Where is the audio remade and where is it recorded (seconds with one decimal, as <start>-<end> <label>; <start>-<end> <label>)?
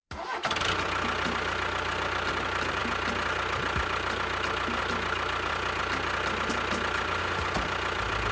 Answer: 0.0-8.3 recorded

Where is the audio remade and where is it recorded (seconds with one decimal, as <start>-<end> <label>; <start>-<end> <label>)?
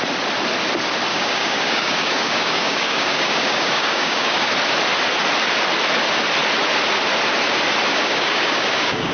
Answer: 0.0-1.1 recorded; 1.1-4.5 remade; 4.5-7.9 recorded; 7.9-9.1 remade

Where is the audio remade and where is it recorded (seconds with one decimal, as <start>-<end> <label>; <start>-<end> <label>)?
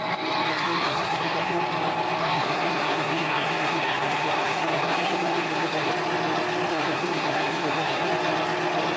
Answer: 0.0-0.5 recorded; 0.5-1.6 remade; 1.6-2.2 recorded; 2.2-5.9 remade; 5.9-6.7 recorded; 6.7-8.1 remade; 8.1-9.0 recorded